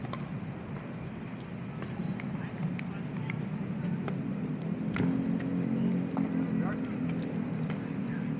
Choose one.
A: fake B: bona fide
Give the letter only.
B